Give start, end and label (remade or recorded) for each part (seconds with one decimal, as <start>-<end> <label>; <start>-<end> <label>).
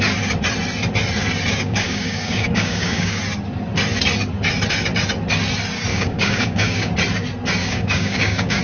0.0-1.5 recorded; 1.5-3.2 remade; 3.2-5.9 recorded; 5.9-6.9 remade; 6.9-7.6 recorded; 7.6-8.6 remade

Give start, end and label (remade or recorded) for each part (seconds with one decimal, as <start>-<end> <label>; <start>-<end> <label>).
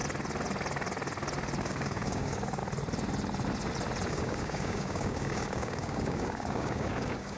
0.0-1.6 recorded; 1.6-2.6 remade; 2.6-4.1 recorded; 4.1-7.4 remade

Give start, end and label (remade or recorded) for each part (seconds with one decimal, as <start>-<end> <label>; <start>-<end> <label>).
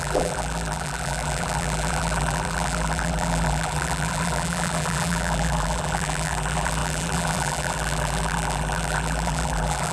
0.0-9.9 remade